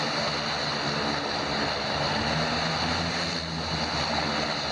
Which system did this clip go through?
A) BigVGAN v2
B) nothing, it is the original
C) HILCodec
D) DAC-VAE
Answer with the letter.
B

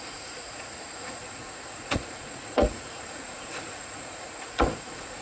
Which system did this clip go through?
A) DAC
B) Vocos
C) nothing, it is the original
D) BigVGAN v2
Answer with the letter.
B